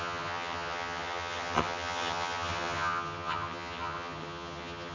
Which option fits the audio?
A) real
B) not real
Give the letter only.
B